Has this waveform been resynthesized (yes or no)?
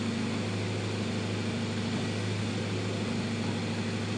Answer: no